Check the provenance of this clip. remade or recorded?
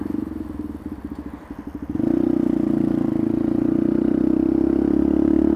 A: recorded